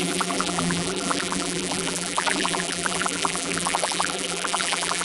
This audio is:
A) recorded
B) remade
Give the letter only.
B